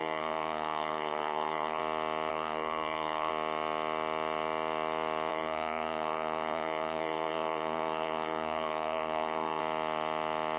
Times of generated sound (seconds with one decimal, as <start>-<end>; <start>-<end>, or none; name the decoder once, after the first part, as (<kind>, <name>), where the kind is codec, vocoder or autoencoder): 0.0-1.8 (codec, SNAC); 2.3-3.3; 5.3-9.6